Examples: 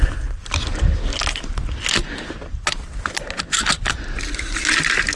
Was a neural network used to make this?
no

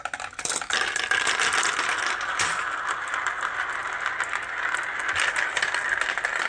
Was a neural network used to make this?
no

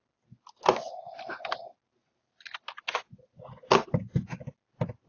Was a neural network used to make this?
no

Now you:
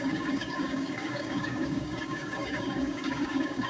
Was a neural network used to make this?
yes